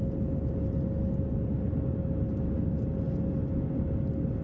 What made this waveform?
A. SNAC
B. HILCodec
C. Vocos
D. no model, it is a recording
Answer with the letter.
D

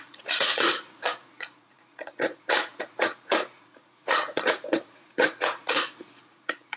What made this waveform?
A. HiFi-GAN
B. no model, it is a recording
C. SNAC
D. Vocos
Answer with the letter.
D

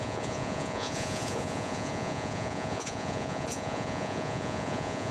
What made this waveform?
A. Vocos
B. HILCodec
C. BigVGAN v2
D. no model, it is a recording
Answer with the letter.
A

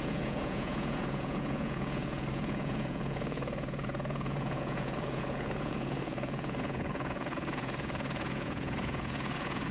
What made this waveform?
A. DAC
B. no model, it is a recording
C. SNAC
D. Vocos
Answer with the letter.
D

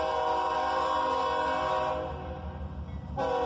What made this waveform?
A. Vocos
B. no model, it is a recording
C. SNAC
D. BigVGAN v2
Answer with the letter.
B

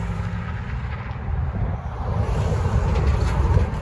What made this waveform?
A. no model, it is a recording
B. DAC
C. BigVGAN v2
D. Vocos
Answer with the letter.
A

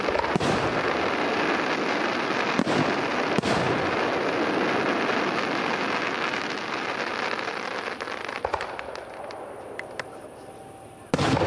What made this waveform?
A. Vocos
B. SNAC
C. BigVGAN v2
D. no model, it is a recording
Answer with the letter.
D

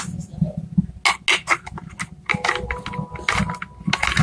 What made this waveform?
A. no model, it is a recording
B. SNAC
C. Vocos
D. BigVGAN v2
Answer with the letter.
A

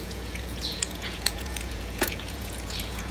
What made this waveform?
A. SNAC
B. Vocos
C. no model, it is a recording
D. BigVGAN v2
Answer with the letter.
B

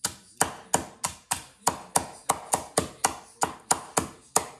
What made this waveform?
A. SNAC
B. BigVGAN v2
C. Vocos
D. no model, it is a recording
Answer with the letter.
D